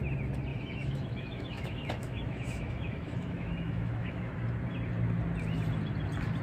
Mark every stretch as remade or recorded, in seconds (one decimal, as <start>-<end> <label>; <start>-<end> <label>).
0.0-0.5 recorded; 0.5-4.3 remade; 4.3-6.4 recorded